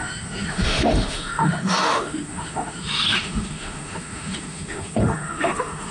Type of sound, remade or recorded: remade